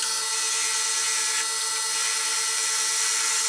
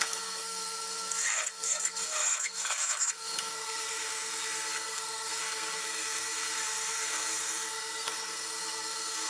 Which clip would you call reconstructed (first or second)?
second